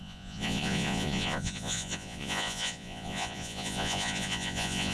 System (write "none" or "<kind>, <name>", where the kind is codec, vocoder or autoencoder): vocoder, Vocos